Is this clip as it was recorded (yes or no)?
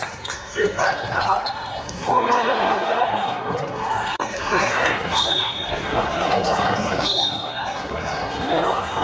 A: no